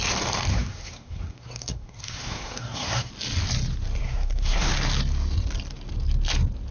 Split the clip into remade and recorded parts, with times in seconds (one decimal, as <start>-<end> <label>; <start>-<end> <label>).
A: 0.0-0.5 recorded; 0.5-3.1 remade; 3.1-4.0 recorded; 4.0-4.7 remade; 4.7-6.7 recorded